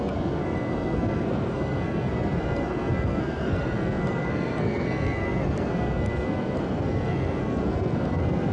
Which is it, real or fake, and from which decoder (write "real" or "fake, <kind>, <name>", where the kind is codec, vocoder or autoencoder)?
fake, codec, SNAC